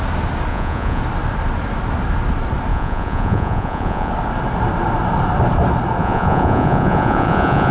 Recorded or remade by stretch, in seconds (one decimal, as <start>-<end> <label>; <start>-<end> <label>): 0.0-0.5 recorded; 0.5-1.0 remade; 1.0-2.7 recorded; 2.7-4.1 remade; 4.1-6.0 recorded; 6.0-7.7 remade